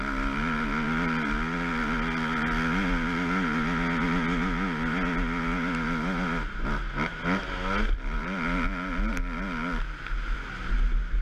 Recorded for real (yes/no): yes